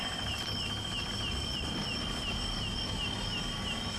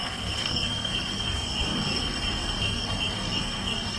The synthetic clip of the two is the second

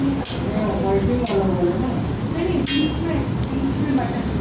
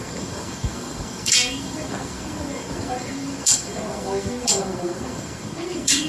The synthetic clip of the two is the second